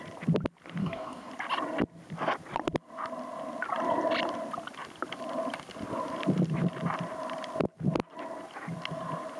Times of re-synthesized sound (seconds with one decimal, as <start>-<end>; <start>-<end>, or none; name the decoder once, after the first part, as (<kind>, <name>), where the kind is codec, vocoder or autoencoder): 0.8-1.3 (codec, DAC)